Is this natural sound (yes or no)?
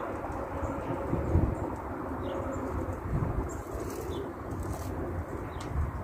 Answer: yes